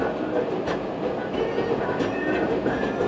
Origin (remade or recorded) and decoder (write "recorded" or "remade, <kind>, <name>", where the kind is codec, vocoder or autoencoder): recorded